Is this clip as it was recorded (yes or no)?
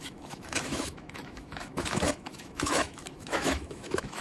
no